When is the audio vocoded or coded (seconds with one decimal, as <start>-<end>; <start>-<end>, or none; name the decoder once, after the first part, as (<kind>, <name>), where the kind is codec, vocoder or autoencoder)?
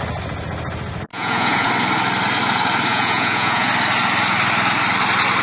1.1-1.7 (vocoder, Vocos); 2.9-3.7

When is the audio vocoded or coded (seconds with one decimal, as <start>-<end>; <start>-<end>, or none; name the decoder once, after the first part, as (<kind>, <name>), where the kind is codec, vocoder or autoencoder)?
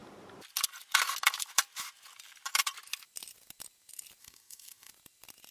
4.2-4.9 (codec, DAC)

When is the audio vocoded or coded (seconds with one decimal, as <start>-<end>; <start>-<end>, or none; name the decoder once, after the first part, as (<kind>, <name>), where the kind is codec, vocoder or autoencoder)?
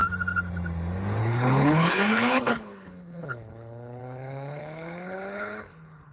1.2-6.1 (codec, HILCodec)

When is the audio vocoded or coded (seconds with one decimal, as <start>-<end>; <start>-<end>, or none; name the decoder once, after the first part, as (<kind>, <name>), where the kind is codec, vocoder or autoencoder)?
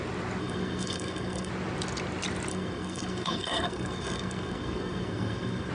0.4-1.5 (codec, SNAC); 2.5-5.7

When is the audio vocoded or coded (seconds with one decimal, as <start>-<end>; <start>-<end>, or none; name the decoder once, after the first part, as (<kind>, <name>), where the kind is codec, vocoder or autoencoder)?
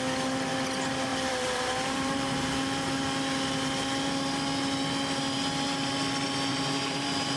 1.1-2.5 (vocoder, BigVGAN v2); 6.5-7.4